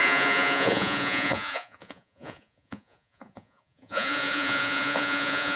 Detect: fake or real fake